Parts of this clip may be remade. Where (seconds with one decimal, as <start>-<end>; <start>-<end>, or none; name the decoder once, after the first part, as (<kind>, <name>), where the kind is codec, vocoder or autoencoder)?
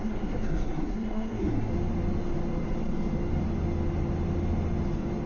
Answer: 0.0-1.7 (codec, SNAC)